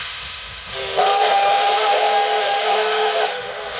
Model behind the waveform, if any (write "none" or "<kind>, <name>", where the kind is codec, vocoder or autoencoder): autoencoder, DAC-VAE